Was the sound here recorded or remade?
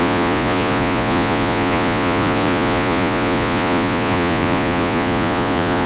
remade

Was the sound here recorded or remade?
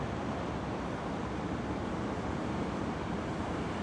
recorded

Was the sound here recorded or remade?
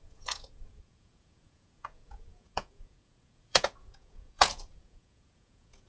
remade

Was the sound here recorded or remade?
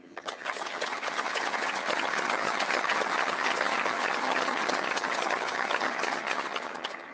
remade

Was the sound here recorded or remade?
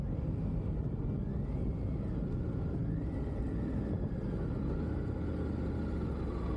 recorded